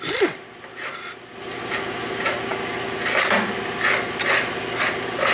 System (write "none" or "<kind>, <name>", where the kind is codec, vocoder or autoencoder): none